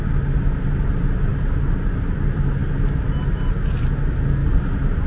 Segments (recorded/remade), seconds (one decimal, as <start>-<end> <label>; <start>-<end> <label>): 0.0-5.1 recorded